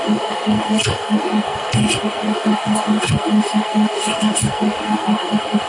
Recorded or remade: remade